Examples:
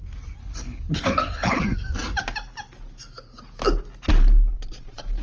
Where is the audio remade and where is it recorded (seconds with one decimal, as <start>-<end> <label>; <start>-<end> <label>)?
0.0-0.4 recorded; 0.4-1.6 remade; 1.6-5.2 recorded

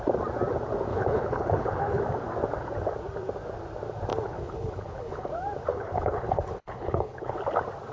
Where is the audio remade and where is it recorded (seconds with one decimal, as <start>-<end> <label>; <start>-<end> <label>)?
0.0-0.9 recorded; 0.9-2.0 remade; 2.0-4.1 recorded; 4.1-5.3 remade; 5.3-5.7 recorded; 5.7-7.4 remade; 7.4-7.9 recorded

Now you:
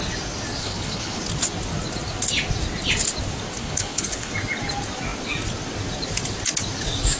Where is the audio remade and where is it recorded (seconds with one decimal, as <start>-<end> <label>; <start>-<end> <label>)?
0.0-0.6 recorded; 0.6-1.2 remade; 1.2-3.6 recorded; 3.6-4.3 remade; 4.3-7.2 recorded

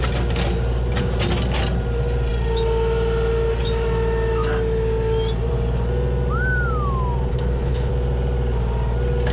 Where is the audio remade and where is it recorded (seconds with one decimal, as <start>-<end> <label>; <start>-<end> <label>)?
0.0-7.3 recorded; 7.3-7.9 remade; 7.9-9.3 recorded

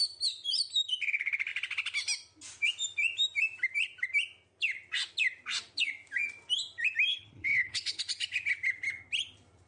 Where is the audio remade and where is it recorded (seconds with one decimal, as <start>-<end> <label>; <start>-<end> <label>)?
0.0-7.1 recorded; 7.1-8.0 remade; 8.0-9.7 recorded